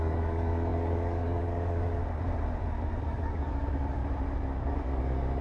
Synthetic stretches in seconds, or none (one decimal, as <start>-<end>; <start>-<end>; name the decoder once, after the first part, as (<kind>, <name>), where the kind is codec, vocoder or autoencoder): 0.0-2.0 (codec, DAC); 3.0-4.0; 4.6-5.4